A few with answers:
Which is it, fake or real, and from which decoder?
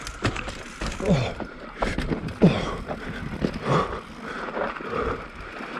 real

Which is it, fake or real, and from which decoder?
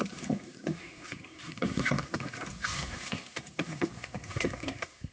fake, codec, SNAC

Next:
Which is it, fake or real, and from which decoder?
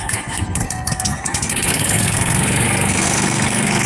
fake, codec, SNAC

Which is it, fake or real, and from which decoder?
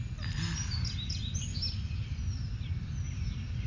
real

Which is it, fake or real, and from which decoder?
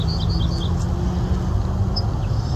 real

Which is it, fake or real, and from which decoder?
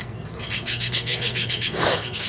fake, codec, SNAC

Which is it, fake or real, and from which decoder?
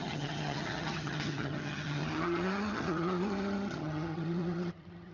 fake, vocoder, HiFi-GAN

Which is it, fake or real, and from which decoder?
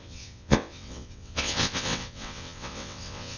fake, vocoder, WaveNeXt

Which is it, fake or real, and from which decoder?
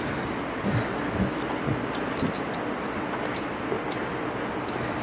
real